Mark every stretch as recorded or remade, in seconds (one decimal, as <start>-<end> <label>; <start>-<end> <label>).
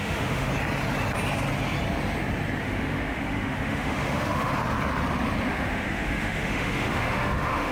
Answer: 0.0-0.5 remade; 0.5-2.6 recorded; 2.6-4.5 remade; 4.5-5.5 recorded; 5.5-7.7 remade